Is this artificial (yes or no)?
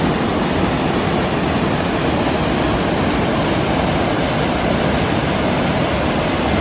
no